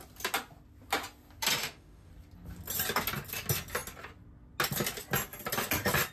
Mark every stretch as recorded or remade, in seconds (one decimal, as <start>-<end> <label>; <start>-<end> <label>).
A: 0.0-1.6 recorded; 1.6-2.1 remade; 2.1-6.1 recorded